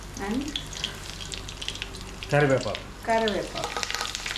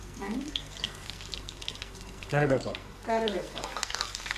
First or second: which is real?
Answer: first